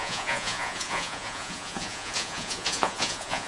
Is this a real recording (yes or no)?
no